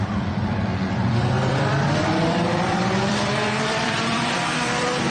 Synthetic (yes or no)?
yes